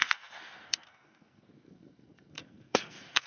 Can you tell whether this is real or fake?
fake